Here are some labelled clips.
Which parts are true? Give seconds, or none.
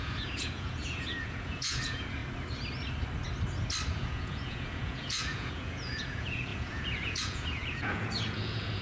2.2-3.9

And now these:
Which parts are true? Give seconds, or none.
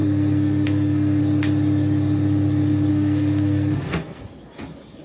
1.2-2.9; 4.3-5.0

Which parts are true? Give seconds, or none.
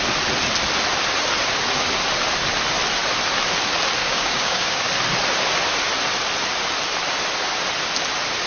0.0-4.0; 4.9-8.5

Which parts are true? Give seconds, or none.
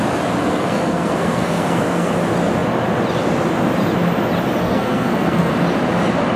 0.0-0.4; 2.1-4.6; 5.5-6.4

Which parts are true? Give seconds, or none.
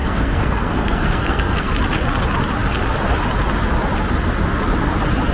1.7-5.3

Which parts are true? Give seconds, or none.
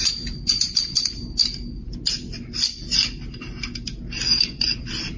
0.0-5.2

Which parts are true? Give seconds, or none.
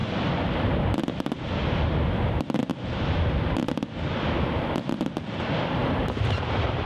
0.5-2.7; 3.4-5.8; 6.4-6.9